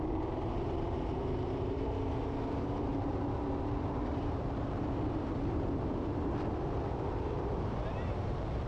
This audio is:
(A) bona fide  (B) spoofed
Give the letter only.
B